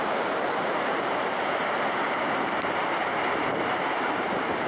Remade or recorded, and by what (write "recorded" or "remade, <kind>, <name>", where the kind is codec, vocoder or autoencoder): remade, vocoder, BigVGAN v2